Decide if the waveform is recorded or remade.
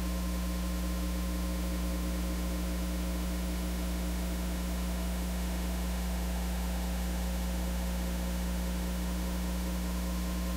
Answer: remade